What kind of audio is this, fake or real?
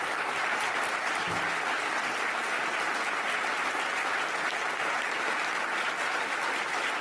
real